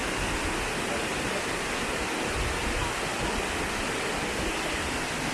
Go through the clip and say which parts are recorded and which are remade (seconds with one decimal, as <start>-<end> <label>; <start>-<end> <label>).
0.0-5.3 recorded